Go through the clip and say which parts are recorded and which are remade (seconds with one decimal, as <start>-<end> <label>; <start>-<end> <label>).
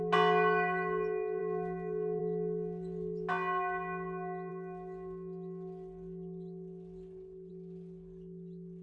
0.0-8.8 recorded